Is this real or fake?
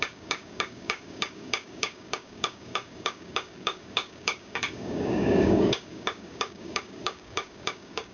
fake